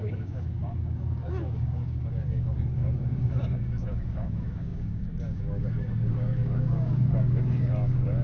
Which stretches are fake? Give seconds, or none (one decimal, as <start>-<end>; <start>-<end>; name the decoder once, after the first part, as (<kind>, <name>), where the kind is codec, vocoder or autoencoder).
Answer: 0.0-8.2 (codec, DAC)